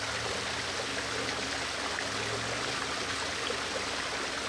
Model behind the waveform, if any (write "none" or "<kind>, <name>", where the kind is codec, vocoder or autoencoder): none